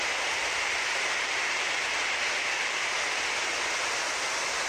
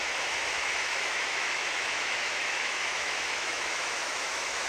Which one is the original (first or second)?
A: first